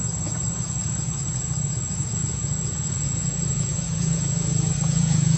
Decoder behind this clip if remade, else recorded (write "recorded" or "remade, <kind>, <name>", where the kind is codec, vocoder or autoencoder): remade, vocoder, Vocos